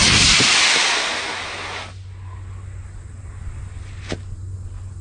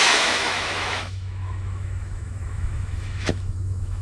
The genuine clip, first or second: first